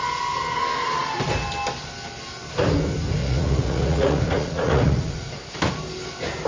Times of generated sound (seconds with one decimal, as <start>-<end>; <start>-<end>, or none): 3.2-5.3